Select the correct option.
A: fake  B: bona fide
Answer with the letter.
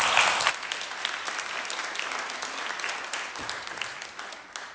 B